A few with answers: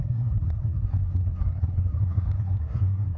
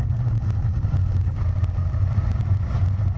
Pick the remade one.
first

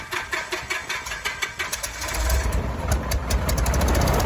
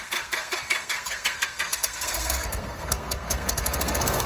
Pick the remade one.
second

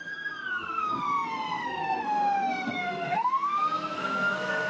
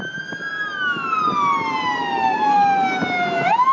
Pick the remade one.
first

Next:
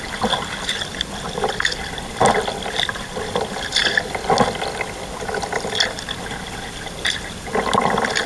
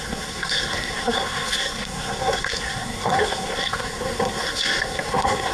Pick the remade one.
second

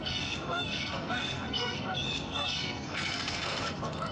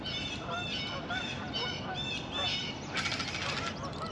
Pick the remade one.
first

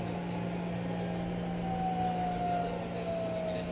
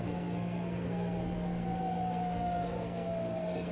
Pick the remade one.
second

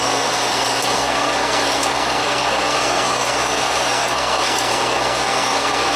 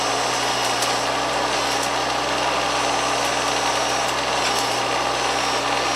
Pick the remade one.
first